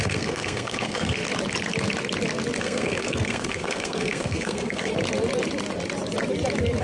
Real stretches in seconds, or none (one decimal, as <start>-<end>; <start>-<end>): 1.2-2.6; 4.9-6.8